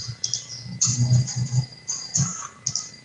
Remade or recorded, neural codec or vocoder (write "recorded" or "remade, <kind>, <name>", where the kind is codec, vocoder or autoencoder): recorded